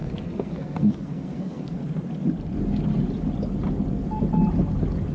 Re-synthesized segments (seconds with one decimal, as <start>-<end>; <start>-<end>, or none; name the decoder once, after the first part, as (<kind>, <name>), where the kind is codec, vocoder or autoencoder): 0.0-1.8 (codec, SNAC)